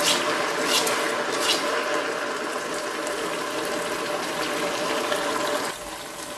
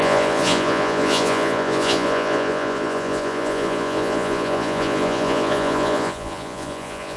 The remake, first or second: second